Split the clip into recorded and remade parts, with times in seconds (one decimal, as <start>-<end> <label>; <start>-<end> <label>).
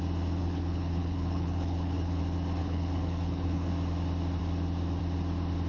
0.0-0.4 recorded; 0.4-2.2 remade; 2.2-2.6 recorded; 2.6-3.7 remade; 3.7-5.7 recorded